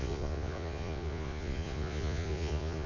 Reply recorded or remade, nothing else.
remade